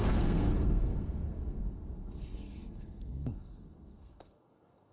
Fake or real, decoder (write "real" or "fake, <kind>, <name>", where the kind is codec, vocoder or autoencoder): fake, codec, SNAC